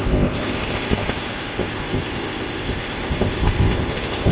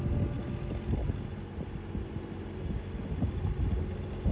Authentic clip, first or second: second